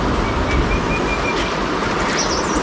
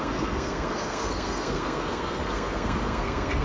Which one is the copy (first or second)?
second